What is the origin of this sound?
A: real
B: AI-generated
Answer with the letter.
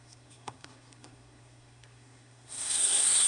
B